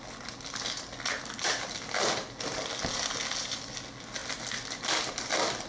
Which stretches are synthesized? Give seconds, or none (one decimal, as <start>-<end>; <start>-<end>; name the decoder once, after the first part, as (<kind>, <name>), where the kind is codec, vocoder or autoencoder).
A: none